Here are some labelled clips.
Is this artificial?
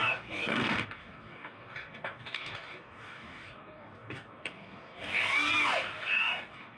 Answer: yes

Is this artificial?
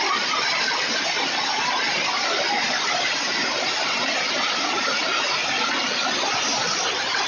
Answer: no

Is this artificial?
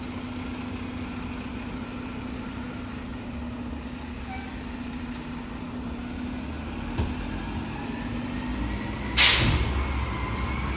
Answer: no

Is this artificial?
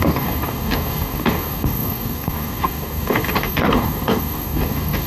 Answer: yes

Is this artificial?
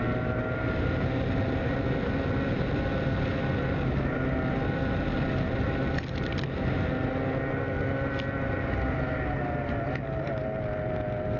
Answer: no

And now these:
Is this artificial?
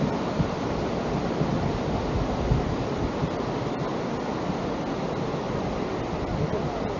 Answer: no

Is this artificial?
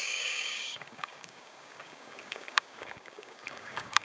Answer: yes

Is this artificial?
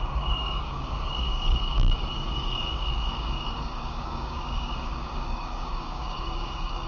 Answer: yes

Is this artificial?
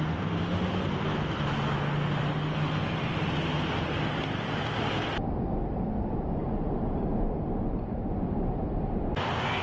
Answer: no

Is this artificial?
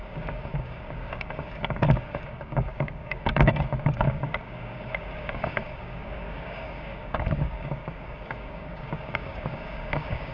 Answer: yes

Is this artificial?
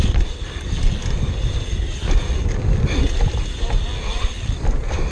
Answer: no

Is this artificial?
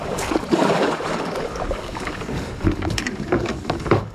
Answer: yes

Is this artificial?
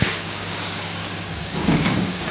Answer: yes